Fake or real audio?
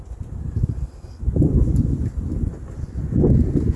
real